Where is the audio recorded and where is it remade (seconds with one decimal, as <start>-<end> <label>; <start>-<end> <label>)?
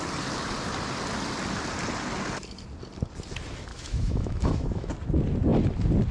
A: 0.0-3.7 recorded; 3.7-4.9 remade; 4.9-6.1 recorded